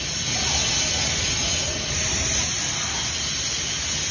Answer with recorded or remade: recorded